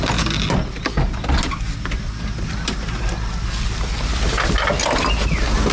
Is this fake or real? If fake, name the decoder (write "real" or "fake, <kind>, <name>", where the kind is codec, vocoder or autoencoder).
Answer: real